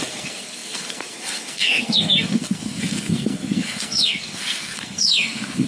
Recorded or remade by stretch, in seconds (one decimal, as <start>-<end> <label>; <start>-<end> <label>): 0.0-5.7 remade